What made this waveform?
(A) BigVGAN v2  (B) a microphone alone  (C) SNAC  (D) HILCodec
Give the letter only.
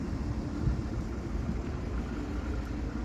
B